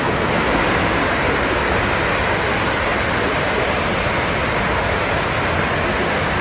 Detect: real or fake real